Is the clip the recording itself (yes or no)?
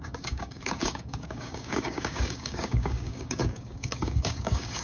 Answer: no